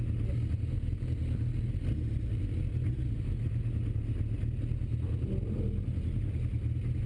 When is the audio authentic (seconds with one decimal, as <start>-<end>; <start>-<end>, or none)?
0.0-7.1